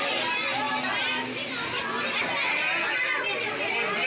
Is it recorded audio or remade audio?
recorded